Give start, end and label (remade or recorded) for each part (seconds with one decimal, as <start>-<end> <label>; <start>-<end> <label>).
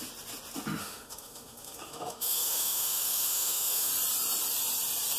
0.0-0.8 recorded; 0.8-3.9 remade; 3.9-5.2 recorded